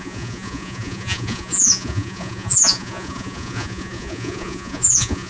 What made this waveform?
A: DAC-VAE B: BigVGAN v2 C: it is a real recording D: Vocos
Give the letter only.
D